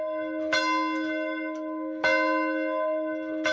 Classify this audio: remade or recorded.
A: recorded